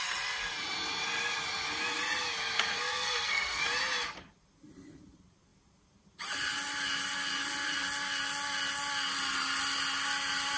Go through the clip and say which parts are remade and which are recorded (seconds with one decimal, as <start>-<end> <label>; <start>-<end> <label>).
0.0-2.7 recorded; 2.7-3.6 remade; 3.6-10.6 recorded